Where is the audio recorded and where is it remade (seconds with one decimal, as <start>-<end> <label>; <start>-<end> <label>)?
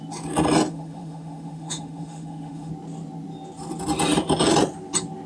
0.0-0.7 recorded; 0.7-2.7 remade; 2.7-5.3 recorded